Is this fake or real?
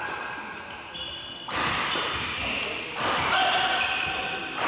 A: real